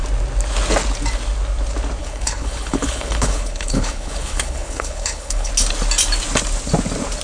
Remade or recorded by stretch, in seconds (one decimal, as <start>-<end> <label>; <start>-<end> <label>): 0.0-2.0 recorded; 2.0-5.5 remade; 5.5-7.2 recorded